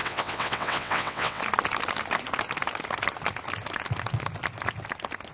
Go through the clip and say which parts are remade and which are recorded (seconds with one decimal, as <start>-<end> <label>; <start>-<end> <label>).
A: 0.0-1.4 remade; 1.4-5.3 recorded